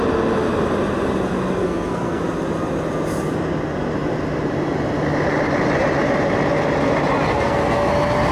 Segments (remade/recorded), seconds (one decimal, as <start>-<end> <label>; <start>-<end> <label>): 0.0-1.6 recorded; 1.6-2.2 remade; 2.2-7.3 recorded; 7.3-7.9 remade; 7.9-8.3 recorded